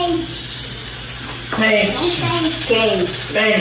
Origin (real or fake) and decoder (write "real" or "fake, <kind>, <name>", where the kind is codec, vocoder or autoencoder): real